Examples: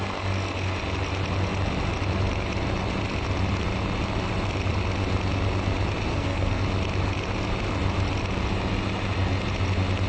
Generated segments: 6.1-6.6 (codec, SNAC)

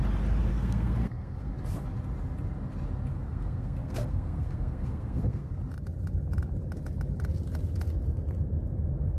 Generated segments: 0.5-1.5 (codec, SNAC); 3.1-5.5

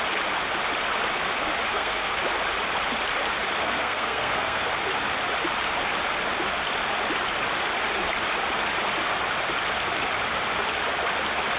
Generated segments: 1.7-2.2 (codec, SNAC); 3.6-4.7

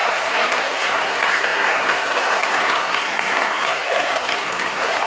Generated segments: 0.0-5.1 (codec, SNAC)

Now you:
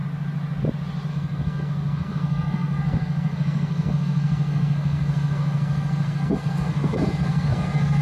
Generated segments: 1.1-8.0 (codec, SNAC)

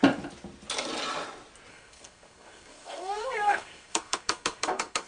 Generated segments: 1.7-5.1 (codec, SNAC)

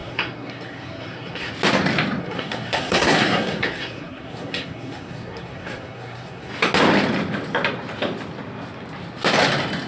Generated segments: 0.0-1.5 (codec, SNAC); 2.2-6.5

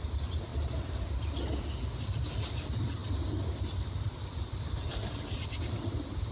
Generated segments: none